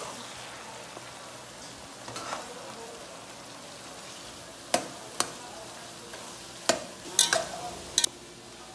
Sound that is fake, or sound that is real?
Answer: real